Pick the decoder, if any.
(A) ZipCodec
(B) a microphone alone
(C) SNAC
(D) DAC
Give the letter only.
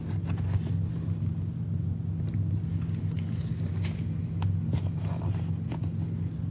B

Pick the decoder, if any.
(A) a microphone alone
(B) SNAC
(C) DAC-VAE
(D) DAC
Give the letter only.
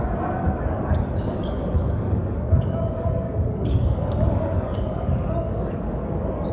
D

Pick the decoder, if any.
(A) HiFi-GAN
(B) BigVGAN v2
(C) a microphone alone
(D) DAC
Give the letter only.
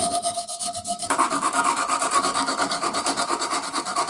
D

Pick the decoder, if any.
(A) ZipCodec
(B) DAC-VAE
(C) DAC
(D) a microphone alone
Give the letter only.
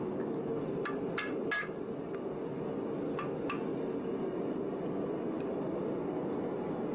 D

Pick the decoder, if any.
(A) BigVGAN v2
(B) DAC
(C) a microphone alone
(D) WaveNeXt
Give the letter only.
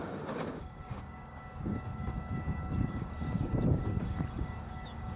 B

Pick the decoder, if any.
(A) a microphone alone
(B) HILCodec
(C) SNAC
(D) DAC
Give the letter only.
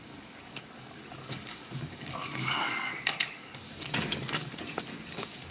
D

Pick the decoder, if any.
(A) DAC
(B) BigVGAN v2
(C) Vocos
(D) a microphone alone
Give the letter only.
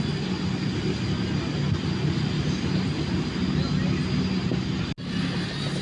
D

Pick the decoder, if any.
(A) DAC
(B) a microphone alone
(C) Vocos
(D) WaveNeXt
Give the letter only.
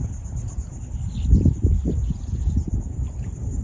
B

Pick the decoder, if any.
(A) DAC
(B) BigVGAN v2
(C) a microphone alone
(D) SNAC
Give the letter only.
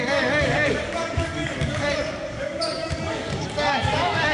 A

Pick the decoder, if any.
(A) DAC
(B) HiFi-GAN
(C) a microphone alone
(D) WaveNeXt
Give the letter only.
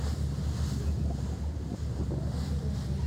C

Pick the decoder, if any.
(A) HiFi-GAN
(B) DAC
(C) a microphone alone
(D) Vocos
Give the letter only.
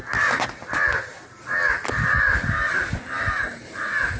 C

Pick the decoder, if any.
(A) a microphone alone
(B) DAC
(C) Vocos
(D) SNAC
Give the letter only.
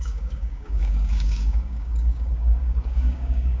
B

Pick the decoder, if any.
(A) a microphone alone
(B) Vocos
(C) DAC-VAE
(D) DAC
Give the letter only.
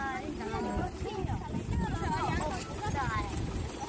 A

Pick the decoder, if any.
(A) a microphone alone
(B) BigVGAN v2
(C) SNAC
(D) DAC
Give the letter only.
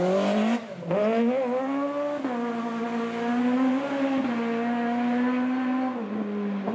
A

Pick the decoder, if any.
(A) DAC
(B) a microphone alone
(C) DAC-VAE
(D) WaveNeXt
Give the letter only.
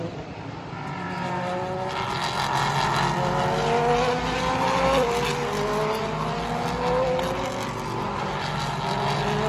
B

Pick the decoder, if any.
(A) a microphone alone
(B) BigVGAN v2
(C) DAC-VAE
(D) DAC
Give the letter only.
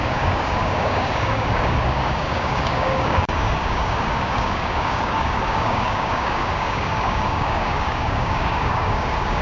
D